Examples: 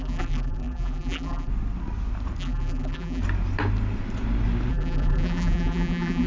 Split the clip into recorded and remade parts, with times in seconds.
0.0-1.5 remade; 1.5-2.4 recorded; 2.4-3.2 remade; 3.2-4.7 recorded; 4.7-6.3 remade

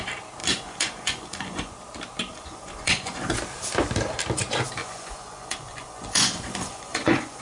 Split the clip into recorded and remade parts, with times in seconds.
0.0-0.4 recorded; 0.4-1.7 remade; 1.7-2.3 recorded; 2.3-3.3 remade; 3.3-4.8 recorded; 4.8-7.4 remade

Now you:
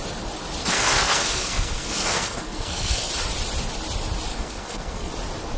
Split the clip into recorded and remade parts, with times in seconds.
0.0-0.6 recorded; 0.6-3.1 remade; 3.1-4.3 recorded; 4.3-5.1 remade; 5.1-5.6 recorded

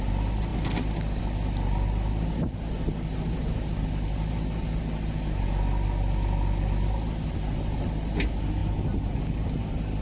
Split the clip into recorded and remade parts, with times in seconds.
0.0-10.0 recorded